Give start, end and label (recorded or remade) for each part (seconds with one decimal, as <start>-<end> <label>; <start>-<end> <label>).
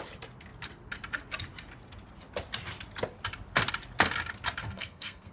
0.0-4.6 recorded; 4.6-5.3 remade